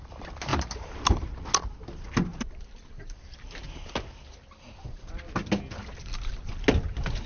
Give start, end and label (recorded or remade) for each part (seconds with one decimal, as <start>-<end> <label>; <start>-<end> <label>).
0.0-0.5 recorded; 0.5-1.2 remade; 1.2-2.3 recorded; 2.3-3.7 remade; 3.7-5.8 recorded; 5.8-6.5 remade; 6.5-7.3 recorded